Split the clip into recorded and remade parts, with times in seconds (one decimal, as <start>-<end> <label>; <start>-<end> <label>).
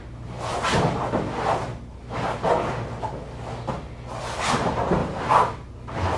0.0-5.0 recorded; 5.0-5.5 remade; 5.5-6.2 recorded